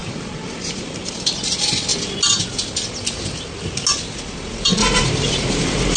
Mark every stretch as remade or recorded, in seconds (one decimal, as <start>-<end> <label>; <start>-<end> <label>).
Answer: 0.0-1.1 remade; 1.1-4.8 recorded; 4.8-6.0 remade